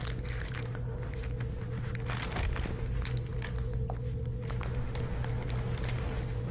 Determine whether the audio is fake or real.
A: real